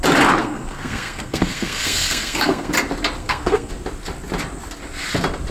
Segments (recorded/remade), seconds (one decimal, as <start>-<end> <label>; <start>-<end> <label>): 0.0-0.4 recorded; 0.4-2.7 remade; 2.7-3.2 recorded; 3.2-3.7 remade; 3.7-5.5 recorded